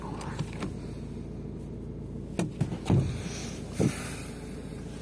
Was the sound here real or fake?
real